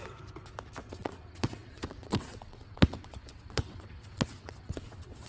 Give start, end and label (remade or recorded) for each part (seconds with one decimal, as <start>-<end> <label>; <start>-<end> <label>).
0.0-0.9 recorded; 0.9-5.3 remade